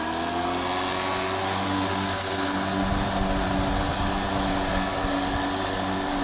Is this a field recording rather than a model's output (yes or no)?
yes